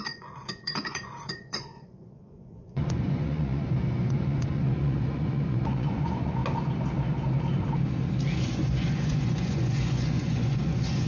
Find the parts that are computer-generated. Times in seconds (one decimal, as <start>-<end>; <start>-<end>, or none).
0.0-6.4; 8.5-11.1